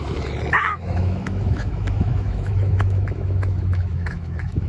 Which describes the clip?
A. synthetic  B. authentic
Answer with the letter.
A